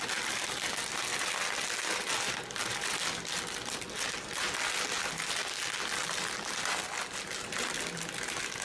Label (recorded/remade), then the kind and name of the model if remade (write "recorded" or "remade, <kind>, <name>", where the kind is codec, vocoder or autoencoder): recorded